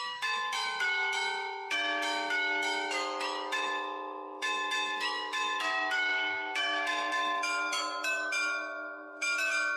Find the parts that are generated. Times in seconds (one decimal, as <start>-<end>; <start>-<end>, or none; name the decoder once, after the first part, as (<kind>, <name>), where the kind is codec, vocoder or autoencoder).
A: 0.0-9.8 (autoencoder, DAC-VAE)